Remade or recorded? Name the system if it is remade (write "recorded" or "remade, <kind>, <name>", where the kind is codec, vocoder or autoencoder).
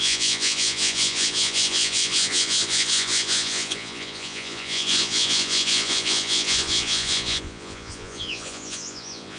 remade, vocoder, Vocos